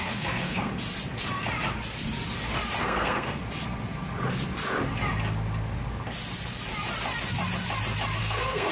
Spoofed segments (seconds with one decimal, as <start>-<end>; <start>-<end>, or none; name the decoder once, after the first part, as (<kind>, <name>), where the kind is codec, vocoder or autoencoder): 0.0-0.7 (codec, SNAC); 2.8-3.4; 8.2-8.7